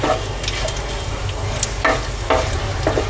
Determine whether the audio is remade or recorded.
recorded